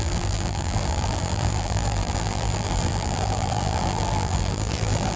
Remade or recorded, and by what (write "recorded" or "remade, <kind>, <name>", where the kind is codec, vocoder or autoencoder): remade, vocoder, BigVGAN v2